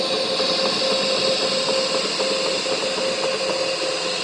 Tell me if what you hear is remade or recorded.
recorded